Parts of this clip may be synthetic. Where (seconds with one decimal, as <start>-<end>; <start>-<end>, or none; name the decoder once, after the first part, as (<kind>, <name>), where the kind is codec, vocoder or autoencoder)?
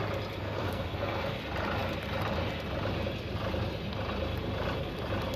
0.4-1.4 (codec, SNAC)